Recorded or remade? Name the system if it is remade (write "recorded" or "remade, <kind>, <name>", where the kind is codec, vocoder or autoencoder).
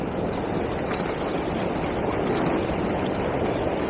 recorded